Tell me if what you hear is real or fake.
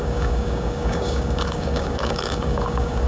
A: fake